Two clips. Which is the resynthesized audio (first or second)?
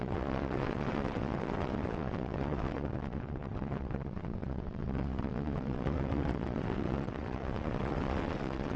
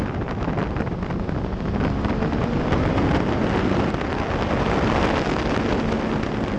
first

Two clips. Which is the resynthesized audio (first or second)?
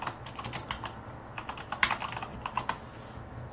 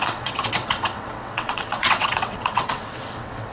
second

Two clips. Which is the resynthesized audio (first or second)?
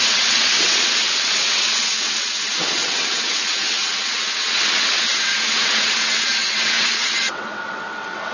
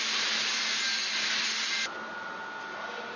first